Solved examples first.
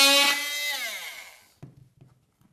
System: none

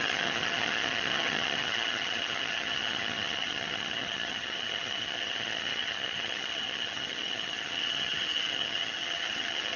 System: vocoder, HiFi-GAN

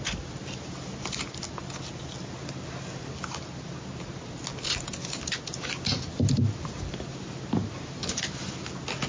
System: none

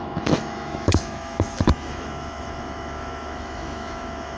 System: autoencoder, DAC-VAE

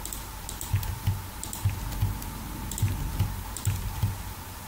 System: none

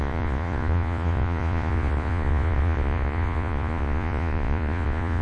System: vocoder, Vocos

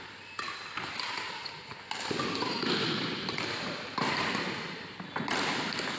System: none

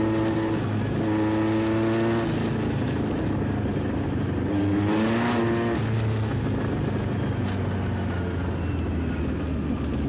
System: none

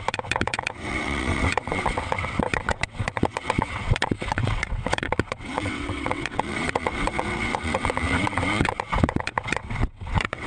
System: vocoder, WaveNeXt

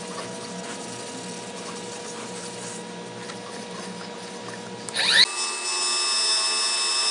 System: none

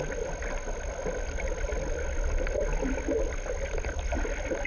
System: none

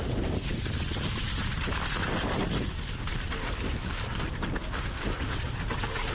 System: none